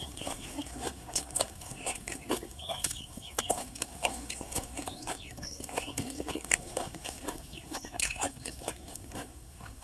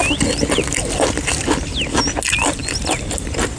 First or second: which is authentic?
second